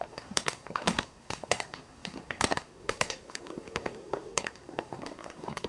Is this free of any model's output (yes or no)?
no